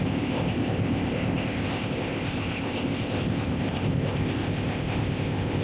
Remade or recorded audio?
remade